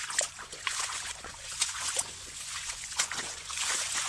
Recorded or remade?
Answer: remade